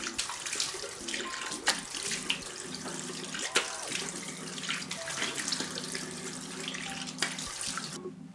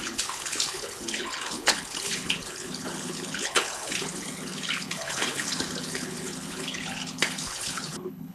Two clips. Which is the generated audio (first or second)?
second